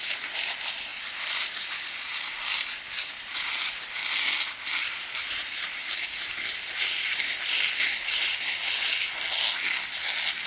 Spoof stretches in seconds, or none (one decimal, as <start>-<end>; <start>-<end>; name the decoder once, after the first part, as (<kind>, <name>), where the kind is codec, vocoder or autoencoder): 0.0-4.0 (vocoder, BigVGAN v2); 4.9-8.9

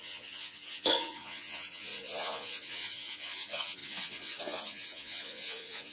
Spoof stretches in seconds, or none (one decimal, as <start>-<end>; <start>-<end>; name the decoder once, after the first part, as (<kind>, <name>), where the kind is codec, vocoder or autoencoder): 0.0-5.9 (vocoder, Vocos)

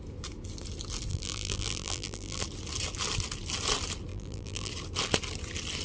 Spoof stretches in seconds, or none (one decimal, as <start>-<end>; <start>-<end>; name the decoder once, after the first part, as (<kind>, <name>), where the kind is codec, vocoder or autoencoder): 1.1-2.4 (vocoder, BigVGAN v2); 4.1-4.7

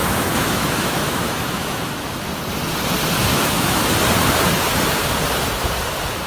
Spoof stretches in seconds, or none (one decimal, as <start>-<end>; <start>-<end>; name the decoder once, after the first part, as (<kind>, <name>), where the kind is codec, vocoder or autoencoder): 0.0-2.3 (autoencoder, DAC-VAE); 3.3-3.9

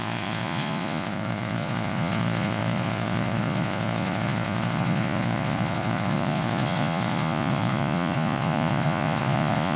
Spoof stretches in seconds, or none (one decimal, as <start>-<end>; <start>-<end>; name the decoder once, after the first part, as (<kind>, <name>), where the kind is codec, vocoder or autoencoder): 0.0-9.8 (vocoder, Vocos)

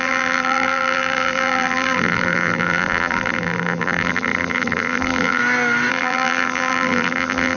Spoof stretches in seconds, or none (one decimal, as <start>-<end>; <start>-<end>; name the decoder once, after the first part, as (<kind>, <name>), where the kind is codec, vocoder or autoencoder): 0.0-5.4 (vocoder, BigVGAN v2); 5.9-7.6

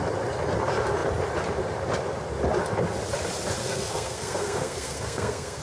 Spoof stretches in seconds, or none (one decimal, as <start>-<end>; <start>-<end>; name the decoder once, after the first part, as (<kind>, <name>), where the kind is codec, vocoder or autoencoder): 3.6-5.6 (codec, SNAC)

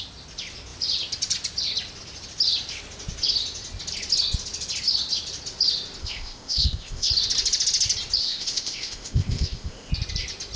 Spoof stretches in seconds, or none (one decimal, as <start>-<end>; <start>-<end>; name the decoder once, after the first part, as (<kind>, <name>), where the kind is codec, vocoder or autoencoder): 6.0-7.1 (codec, ZipCodec); 8.2-9.9